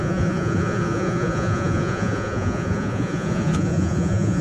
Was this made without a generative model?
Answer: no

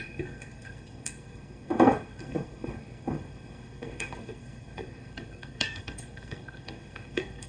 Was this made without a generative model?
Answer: no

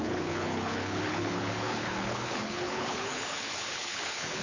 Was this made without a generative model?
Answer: no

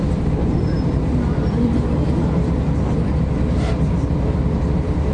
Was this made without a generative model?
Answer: yes